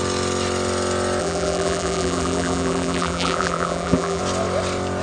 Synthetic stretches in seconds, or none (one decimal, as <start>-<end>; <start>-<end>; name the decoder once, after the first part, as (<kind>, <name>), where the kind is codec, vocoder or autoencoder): 1.2-4.2 (vocoder, BigVGAN v2)